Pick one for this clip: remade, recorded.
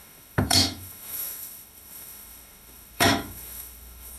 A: remade